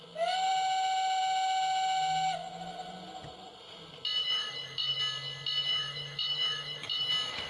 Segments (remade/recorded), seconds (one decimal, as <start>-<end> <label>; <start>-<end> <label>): 0.0-4.2 recorded; 4.2-5.0 remade; 5.0-5.7 recorded; 5.7-7.1 remade; 7.1-7.5 recorded